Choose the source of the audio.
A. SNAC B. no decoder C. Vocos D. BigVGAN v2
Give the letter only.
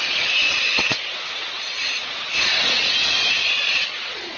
C